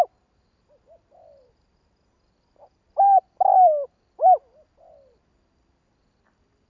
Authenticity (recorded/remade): recorded